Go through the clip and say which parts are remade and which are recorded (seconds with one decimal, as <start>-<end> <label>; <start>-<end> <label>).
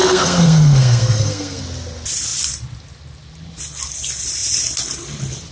0.0-1.6 remade; 1.6-5.5 recorded